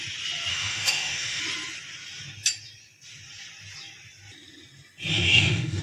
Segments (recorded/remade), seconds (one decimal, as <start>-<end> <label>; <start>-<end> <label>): 0.0-0.5 recorded; 0.5-1.4 remade; 1.4-5.1 recorded; 5.1-5.8 remade